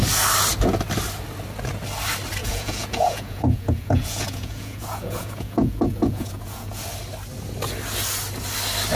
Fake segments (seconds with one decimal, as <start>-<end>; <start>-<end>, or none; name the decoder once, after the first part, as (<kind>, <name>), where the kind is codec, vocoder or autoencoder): 2.4-6.8 (vocoder, Vocos)